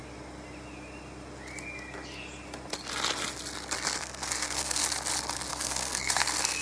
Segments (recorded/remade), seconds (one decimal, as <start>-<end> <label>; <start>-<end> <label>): 0.0-4.0 recorded; 4.0-4.8 remade; 4.8-5.5 recorded; 5.5-6.6 remade